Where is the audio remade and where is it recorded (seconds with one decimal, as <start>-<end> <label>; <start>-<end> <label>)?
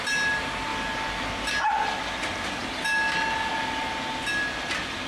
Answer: 0.0-5.1 recorded